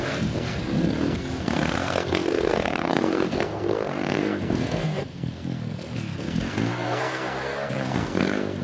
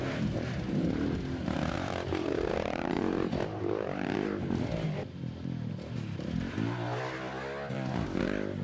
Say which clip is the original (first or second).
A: second